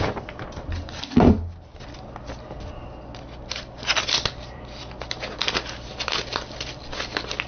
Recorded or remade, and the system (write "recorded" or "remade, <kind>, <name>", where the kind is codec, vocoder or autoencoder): recorded